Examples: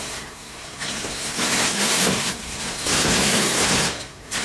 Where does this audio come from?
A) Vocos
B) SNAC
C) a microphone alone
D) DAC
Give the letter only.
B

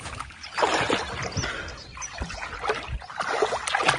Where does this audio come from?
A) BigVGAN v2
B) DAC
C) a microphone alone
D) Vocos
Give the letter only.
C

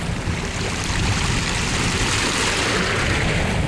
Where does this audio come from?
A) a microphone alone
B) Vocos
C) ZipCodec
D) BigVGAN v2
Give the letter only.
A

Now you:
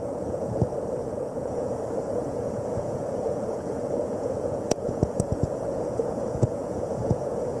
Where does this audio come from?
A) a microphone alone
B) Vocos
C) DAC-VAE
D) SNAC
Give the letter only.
B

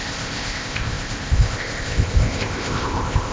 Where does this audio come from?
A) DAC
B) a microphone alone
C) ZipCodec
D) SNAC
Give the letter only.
C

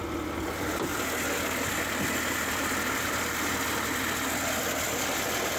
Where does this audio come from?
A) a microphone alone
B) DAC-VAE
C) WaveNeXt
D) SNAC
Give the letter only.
A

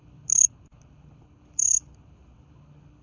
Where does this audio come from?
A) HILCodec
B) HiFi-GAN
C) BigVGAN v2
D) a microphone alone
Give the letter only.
A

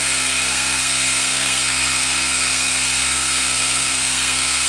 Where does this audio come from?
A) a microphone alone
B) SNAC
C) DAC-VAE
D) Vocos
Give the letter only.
B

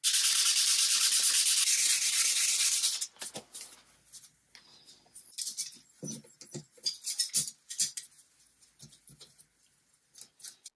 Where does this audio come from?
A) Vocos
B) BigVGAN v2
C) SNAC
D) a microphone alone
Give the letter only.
D